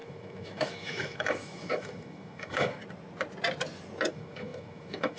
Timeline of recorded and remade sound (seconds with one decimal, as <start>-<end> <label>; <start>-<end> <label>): 0.0-2.8 remade; 2.8-4.1 recorded; 4.1-5.2 remade